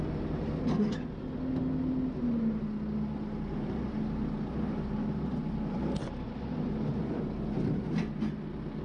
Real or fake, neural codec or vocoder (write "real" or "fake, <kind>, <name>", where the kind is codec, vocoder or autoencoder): real